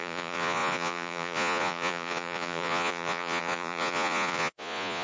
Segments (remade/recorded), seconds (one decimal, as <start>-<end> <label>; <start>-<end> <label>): 0.0-5.0 remade